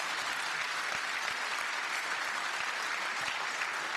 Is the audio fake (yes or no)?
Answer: no